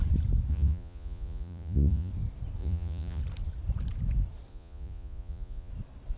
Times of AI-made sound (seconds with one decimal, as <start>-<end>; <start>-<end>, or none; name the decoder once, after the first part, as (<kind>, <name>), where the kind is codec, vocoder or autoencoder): 0.5-2.1 (vocoder, Vocos); 2.6-3.2; 4.5-5.7